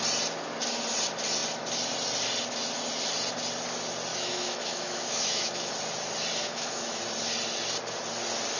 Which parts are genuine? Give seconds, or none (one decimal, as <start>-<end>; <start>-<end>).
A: 0.0-4.1; 5.7-6.4; 7.0-8.6